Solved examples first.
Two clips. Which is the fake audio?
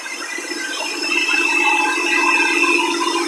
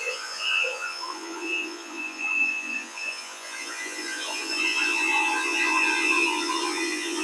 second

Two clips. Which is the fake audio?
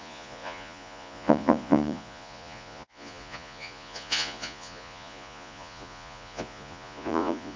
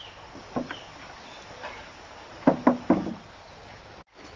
first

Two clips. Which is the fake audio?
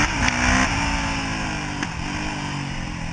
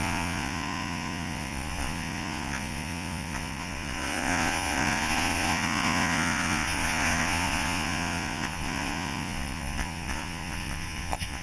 second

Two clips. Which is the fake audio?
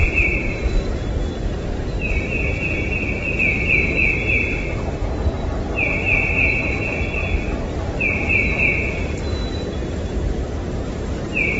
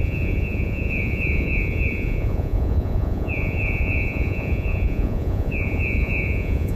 second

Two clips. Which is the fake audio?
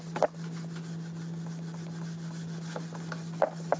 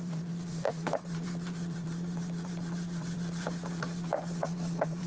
second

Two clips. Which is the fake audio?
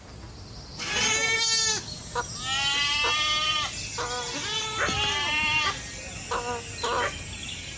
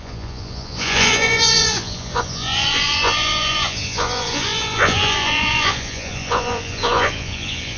second